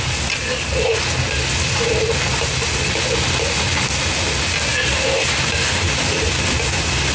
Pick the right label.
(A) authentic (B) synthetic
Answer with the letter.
A